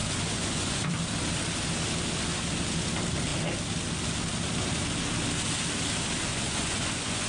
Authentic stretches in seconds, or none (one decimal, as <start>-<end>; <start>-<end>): 0.9-6.3